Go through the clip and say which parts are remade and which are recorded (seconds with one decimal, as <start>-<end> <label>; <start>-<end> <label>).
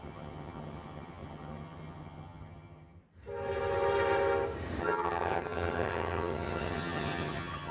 0.0-3.0 remade; 3.0-4.8 recorded; 4.8-7.7 remade